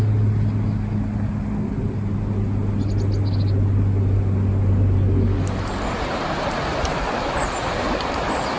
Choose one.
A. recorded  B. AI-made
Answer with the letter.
A